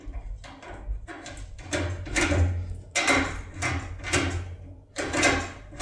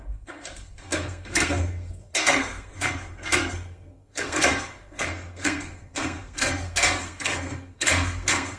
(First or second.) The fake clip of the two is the second